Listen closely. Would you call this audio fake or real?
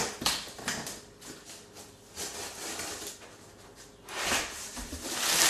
real